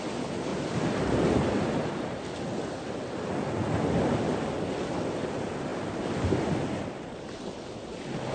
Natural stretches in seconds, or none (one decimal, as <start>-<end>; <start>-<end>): 0.0-8.3